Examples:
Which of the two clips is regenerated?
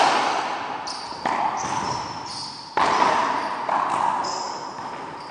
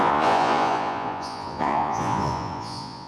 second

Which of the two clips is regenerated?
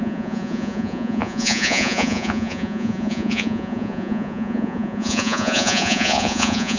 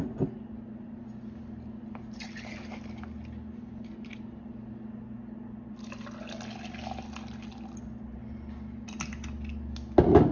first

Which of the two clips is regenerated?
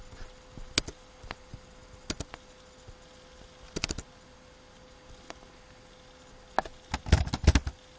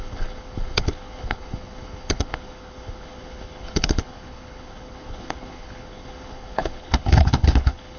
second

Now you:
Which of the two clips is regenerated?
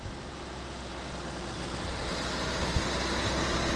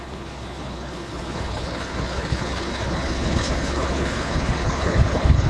second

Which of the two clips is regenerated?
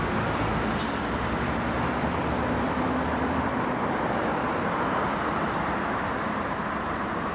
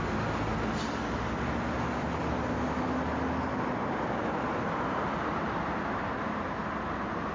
first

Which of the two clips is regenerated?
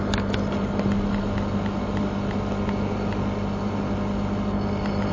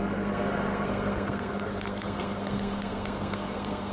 second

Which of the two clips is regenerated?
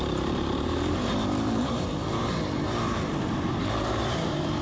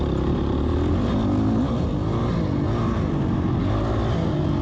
first